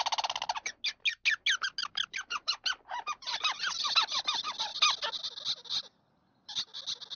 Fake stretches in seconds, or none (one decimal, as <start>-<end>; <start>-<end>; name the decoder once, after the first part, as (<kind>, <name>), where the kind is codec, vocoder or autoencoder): 1.8-4.1 (vocoder, BigVGAN v2)